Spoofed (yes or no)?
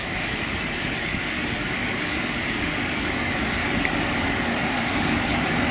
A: yes